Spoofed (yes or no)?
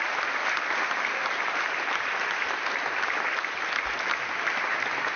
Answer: no